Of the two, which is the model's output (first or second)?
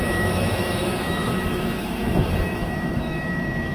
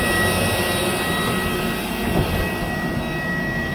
first